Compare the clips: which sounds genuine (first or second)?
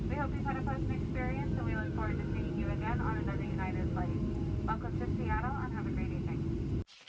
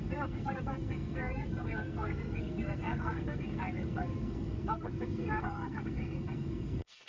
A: first